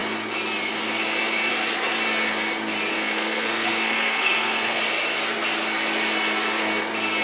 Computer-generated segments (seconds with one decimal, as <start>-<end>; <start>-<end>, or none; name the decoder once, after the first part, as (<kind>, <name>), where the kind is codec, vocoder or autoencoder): 2.9-4.8 (codec, SNAC)